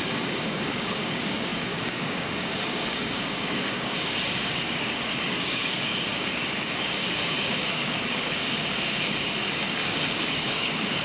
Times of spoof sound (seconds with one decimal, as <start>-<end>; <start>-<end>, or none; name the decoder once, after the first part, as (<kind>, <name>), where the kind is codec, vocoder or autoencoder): 0.0-11.0 (codec, DAC)